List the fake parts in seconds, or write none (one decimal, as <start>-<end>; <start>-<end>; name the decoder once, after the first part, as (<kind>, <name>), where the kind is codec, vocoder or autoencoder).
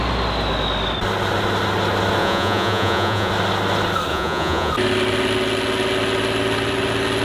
2.2-3.3 (vocoder, Vocos); 4.1-4.7